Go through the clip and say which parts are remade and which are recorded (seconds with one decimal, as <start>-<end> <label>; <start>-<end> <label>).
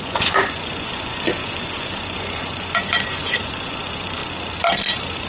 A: 0.0-4.2 remade; 4.2-5.3 recorded